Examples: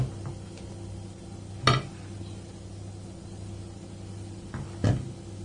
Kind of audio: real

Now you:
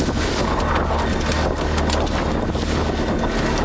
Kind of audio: real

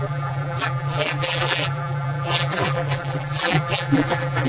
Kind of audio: fake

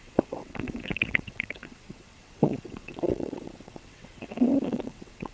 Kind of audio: fake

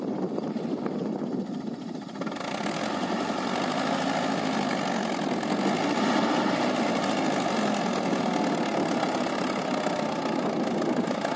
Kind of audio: real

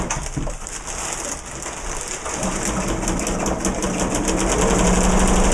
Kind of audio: real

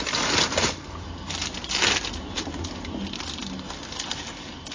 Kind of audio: real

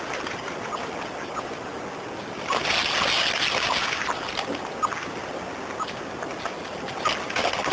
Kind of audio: real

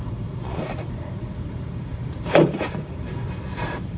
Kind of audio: fake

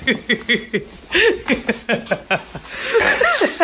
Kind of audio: real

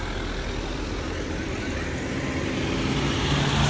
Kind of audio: real